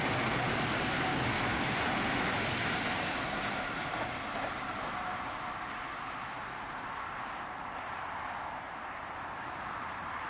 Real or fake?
real